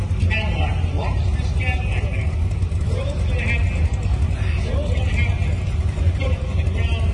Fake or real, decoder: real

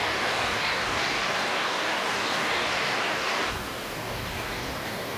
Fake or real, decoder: fake, codec, DAC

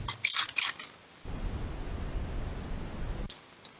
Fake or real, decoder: real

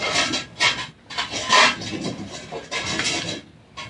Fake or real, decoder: real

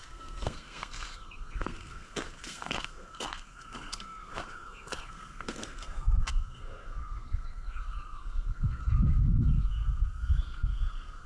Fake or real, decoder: fake, codec, SNAC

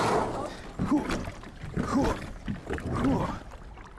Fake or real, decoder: real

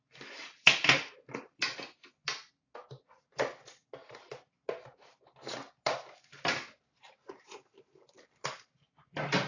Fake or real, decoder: real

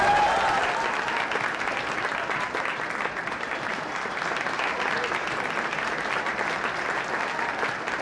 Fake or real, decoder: real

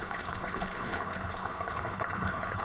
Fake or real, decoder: fake, codec, HILCodec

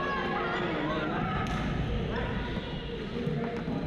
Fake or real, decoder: real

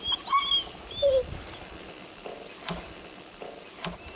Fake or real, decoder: real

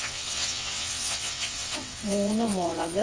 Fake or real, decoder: fake, vocoder, WaveNeXt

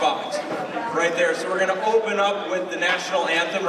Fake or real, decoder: fake, vocoder, BigVGAN v2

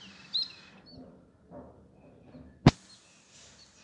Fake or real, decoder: real